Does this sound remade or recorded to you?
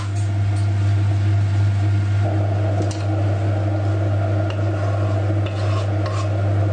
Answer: recorded